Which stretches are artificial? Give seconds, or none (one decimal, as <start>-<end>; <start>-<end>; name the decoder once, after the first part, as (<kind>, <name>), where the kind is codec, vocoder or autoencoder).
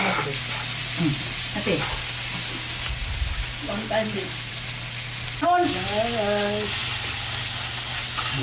none